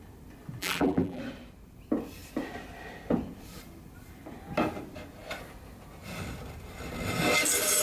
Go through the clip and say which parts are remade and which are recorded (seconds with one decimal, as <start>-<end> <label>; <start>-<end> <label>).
0.0-0.6 recorded; 0.6-1.2 remade; 1.2-7.8 recorded